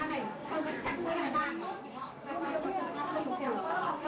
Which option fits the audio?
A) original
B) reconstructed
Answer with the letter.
B